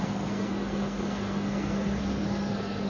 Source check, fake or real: fake